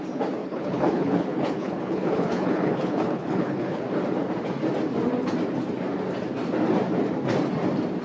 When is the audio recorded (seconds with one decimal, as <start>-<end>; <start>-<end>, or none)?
0.0-0.4; 3.8-8.0